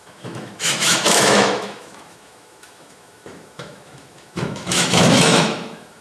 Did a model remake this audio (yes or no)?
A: yes